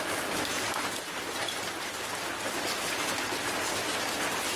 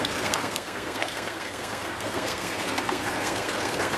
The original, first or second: first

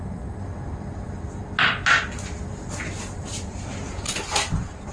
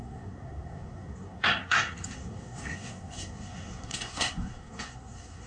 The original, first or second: first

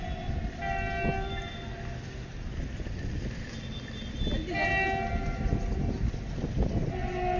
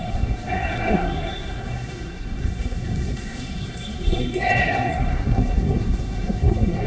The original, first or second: first